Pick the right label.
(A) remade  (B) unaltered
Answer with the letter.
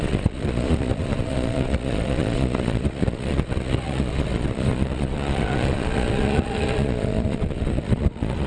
A